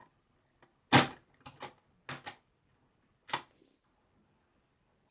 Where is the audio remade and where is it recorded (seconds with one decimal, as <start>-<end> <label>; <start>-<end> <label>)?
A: 0.0-5.1 recorded